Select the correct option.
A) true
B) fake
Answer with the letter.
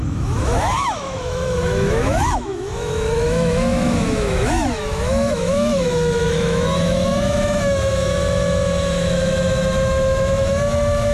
B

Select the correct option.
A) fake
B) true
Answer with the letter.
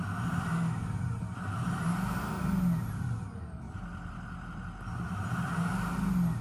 B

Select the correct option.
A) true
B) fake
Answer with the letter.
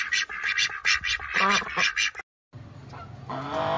A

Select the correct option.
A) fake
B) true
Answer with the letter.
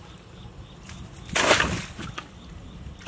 B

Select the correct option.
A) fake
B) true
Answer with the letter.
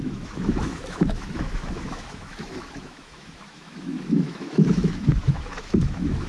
A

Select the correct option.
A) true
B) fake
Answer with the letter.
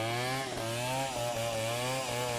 A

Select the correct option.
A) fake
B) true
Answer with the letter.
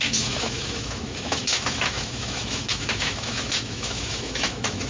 A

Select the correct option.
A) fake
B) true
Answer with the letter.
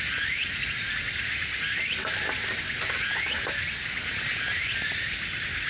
B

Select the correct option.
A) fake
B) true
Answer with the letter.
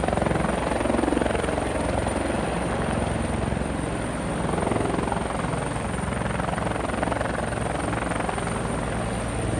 B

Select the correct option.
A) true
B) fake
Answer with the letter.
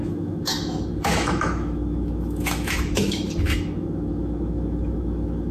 B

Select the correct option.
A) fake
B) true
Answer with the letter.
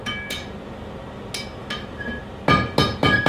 B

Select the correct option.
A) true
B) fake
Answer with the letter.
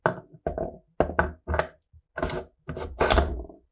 A